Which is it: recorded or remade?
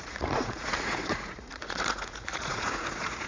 remade